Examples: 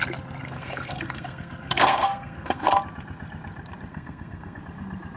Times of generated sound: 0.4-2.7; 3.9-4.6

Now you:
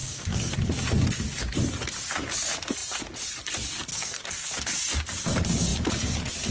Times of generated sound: 0.0-0.5; 3.9-4.5

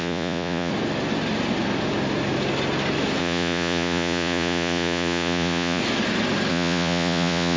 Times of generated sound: 0.0-0.7; 3.2-5.8; 6.5-7.6

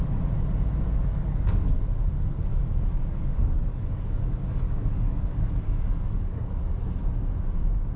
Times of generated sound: 1.1-1.8; 2.5-6.7

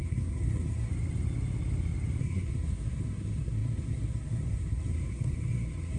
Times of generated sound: 0.0-0.9; 2.2-6.0

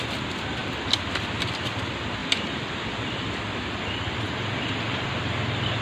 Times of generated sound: none